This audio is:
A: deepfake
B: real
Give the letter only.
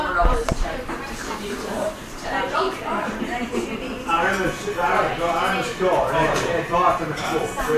A